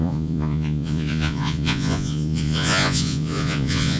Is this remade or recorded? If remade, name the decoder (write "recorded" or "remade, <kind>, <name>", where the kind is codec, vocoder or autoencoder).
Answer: remade, vocoder, Vocos